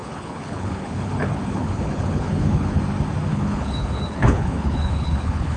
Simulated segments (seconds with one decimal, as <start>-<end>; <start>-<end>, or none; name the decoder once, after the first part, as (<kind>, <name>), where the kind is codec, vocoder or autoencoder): 0.0-2.8 (codec, HILCodec); 3.3-5.6